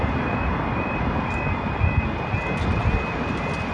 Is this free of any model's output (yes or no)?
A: yes